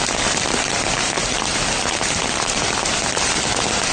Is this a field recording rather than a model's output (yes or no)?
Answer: yes